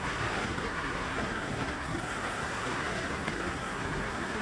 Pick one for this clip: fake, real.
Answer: fake